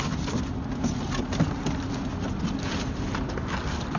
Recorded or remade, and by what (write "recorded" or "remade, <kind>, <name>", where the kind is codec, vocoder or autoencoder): recorded